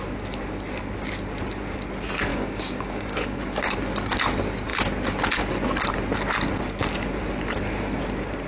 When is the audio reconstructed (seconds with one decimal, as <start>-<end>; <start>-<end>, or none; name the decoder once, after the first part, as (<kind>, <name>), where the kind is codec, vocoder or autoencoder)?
2.3-3.4 (codec, DAC)